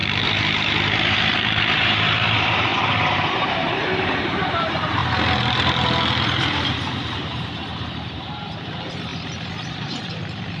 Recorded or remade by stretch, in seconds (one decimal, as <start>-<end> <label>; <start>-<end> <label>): 0.0-5.0 remade; 5.0-6.5 recorded; 6.5-9.1 remade; 9.1-9.7 recorded; 9.7-10.6 remade

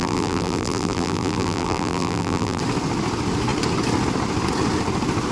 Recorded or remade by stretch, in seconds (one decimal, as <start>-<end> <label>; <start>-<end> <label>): 0.0-2.6 remade; 2.6-5.3 recorded

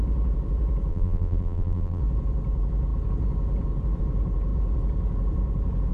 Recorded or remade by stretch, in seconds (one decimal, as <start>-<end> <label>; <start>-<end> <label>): 0.0-0.9 recorded; 0.9-2.0 remade; 2.0-5.9 recorded

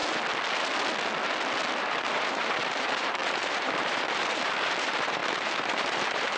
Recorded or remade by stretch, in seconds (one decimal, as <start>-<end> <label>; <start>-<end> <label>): 0.0-1.8 recorded; 1.8-6.4 remade

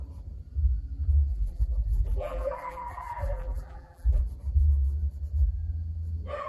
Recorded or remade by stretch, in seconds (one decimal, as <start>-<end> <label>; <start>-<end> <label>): 0.0-1.3 recorded; 1.3-4.2 remade; 4.2-6.5 recorded